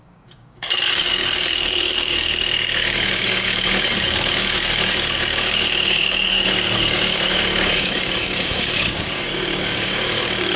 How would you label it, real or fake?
fake